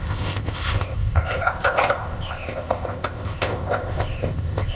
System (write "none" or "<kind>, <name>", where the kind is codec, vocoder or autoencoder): codec, ZipCodec